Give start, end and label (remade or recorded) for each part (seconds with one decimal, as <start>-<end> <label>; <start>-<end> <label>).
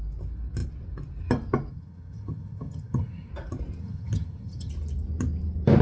0.0-1.7 recorded; 1.7-3.3 remade; 3.3-3.8 recorded; 3.8-4.7 remade; 4.7-5.8 recorded